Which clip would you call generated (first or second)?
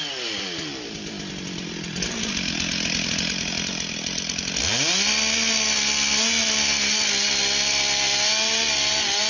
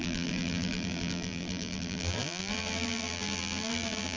second